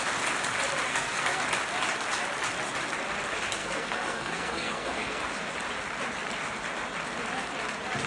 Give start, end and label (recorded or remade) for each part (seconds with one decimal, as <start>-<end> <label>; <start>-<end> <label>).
0.0-0.9 recorded; 0.9-1.4 remade; 1.4-3.6 recorded; 3.6-5.2 remade; 5.2-8.1 recorded